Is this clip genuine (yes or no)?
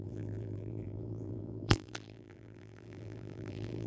no